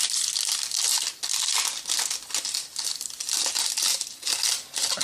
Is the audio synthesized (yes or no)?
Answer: no